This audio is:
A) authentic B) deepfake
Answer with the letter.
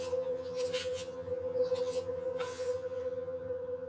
B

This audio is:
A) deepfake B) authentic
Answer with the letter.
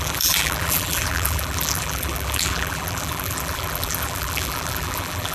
A